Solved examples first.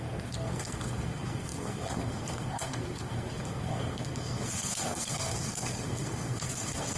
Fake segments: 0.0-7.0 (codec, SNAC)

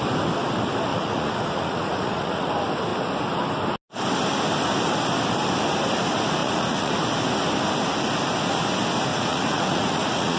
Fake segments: 0.9-2.5 (vocoder, Vocos); 6.4-6.9; 9.1-10.4